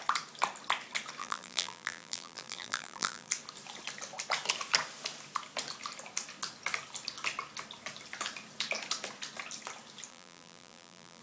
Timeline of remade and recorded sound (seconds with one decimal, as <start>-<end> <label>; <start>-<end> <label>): 0.0-1.2 recorded; 1.2-3.3 remade; 3.3-10.1 recorded; 10.1-11.2 remade